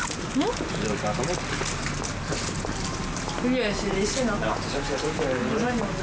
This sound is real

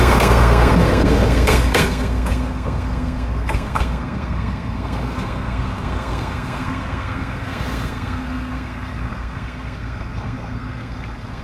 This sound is fake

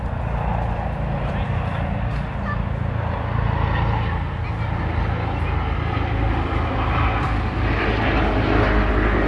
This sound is real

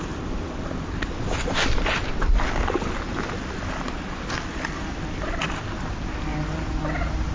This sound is real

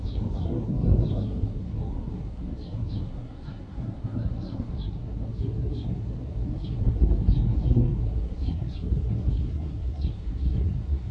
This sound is fake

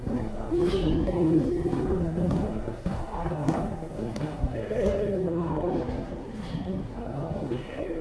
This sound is fake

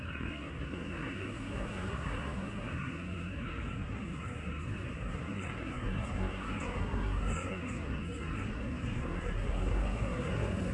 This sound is fake